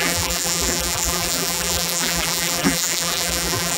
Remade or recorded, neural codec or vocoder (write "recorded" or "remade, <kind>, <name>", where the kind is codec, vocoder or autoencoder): remade, vocoder, BigVGAN v2